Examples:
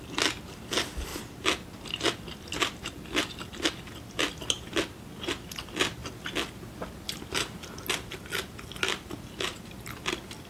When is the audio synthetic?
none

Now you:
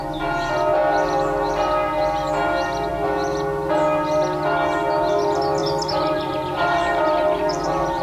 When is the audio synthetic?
5.6-8.0 (vocoder, BigVGAN v2)

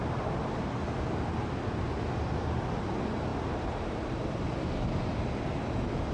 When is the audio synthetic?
0.0-1.3 (vocoder, BigVGAN v2); 3.3-4.4